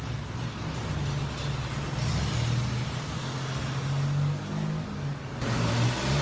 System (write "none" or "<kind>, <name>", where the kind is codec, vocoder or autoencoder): none